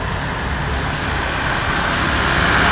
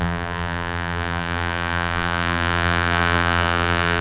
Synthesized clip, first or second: second